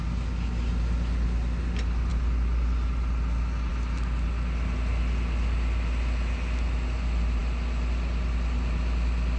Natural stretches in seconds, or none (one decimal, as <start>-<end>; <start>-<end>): 0.0-9.4